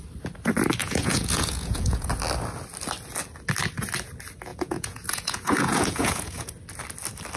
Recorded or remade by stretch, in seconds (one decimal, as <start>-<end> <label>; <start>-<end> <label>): 0.0-0.8 recorded; 0.8-2.1 remade; 2.1-4.5 recorded; 4.5-6.5 remade; 6.5-7.4 recorded